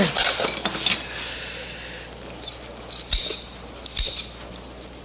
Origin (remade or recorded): recorded